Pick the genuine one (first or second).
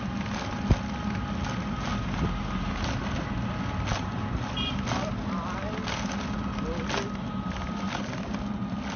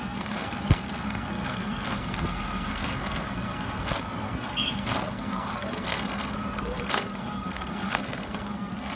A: first